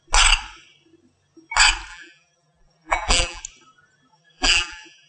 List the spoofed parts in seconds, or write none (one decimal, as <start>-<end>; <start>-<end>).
1.9-3.4; 4.1-5.1